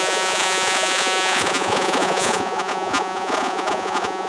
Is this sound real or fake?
fake